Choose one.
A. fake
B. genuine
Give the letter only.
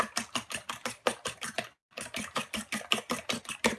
B